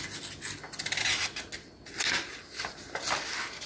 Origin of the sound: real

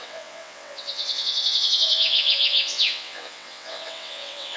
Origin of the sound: fake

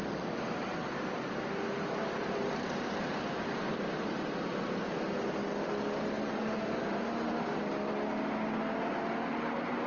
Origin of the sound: real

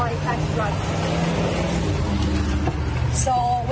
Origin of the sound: real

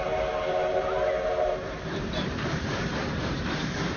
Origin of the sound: fake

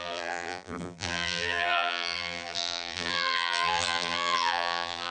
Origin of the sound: fake